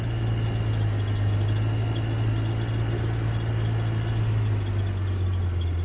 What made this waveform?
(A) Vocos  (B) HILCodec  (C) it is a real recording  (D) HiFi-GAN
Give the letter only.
C